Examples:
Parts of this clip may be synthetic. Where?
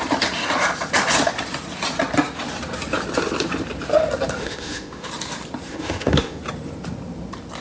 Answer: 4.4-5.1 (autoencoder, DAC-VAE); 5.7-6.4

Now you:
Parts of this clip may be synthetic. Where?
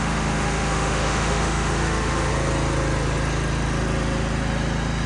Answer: 0.0-2.3 (autoencoder, DAC-VAE)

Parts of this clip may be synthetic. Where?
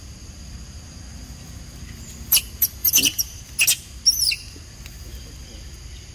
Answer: 2.8-3.4 (vocoder, BigVGAN v2)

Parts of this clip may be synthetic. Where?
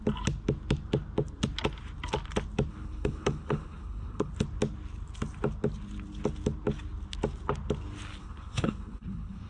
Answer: 2.7-4.3 (codec, HILCodec); 8.2-9.5